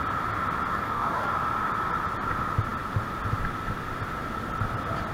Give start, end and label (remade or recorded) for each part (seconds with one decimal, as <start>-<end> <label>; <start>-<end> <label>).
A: 0.0-0.7 recorded; 0.7-1.3 remade; 1.3-5.1 recorded